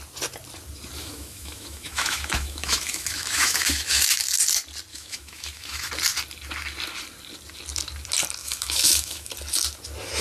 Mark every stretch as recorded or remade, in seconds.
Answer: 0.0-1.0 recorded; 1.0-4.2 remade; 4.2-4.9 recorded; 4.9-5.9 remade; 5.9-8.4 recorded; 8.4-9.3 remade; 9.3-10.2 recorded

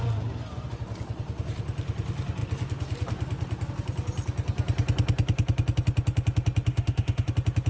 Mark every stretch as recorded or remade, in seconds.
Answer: 0.0-6.7 recorded; 6.7-7.3 remade; 7.3-7.7 recorded

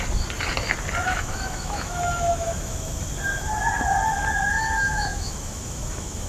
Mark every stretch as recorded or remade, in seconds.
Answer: 0.0-1.0 recorded; 1.0-3.0 remade; 3.0-4.5 recorded; 4.5-6.3 remade

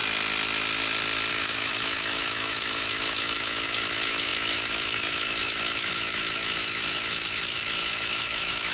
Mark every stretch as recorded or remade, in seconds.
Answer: 0.0-1.3 recorded; 1.3-8.7 remade

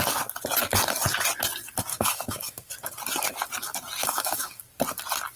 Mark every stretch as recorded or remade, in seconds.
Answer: 0.0-1.9 recorded; 1.9-2.7 remade; 2.7-4.0 recorded; 4.0-4.6 remade; 4.6-5.4 recorded

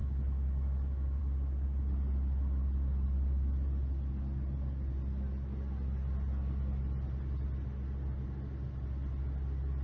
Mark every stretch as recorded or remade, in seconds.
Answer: 0.0-1.2 remade; 1.2-9.8 recorded